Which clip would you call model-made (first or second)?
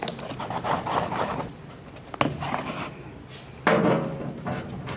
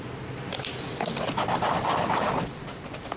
second